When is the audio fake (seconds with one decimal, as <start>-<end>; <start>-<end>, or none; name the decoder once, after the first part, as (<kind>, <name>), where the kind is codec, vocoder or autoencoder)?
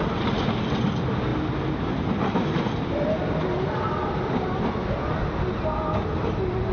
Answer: none